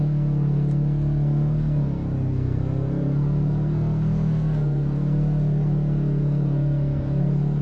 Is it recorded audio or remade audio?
remade